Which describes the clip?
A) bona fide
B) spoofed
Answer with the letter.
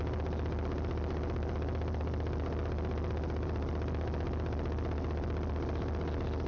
A